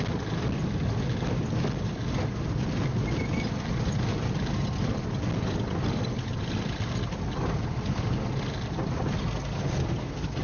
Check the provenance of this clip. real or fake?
real